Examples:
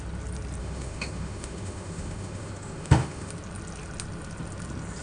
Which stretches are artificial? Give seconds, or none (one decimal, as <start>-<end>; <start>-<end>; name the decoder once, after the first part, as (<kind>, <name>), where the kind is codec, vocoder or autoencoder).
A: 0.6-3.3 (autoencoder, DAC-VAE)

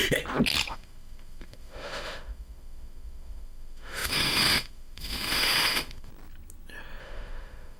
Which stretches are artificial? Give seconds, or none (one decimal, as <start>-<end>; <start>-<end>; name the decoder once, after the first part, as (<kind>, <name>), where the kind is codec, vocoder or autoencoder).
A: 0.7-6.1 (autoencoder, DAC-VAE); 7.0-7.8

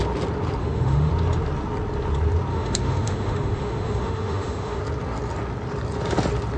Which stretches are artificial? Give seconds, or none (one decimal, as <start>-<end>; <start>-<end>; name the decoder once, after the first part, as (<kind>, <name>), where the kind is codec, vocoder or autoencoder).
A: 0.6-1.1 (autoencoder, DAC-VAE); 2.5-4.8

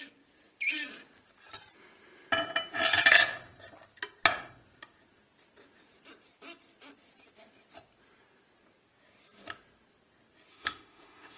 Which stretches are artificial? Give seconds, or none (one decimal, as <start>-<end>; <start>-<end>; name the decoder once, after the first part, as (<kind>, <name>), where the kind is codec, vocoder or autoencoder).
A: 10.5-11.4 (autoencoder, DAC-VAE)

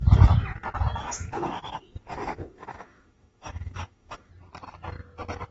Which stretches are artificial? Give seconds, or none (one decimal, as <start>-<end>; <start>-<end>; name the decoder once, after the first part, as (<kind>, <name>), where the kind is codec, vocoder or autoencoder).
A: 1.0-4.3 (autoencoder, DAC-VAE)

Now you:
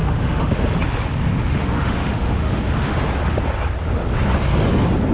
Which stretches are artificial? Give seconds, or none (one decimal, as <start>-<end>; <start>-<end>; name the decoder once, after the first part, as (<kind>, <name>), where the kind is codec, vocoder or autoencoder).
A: 0.0-0.6 (autoencoder, DAC-VAE); 1.3-3.0

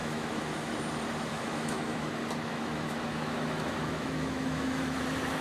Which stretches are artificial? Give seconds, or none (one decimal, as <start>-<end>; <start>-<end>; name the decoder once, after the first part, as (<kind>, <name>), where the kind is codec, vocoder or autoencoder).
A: 0.0-0.8 (autoencoder, DAC-VAE); 1.3-2.1; 2.5-5.0